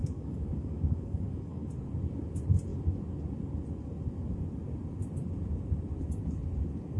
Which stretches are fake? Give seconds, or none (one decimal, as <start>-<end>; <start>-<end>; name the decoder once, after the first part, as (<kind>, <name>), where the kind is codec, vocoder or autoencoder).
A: 0.0-1.7 (codec, DAC)